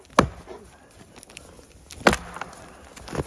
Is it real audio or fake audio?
real